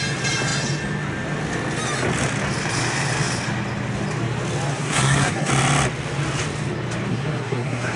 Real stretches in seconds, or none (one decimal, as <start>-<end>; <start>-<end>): 0.0-4.7; 5.5-7.1